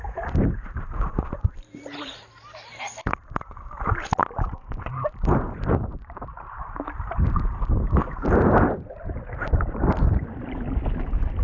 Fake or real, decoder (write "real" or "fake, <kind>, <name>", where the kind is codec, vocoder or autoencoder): real